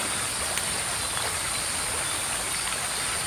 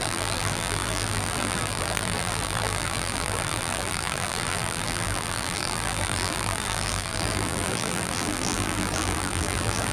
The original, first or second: first